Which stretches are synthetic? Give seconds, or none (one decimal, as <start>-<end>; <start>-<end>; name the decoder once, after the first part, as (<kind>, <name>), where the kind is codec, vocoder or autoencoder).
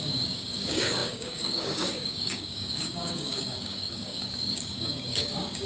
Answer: 0.0-5.7 (codec, DAC)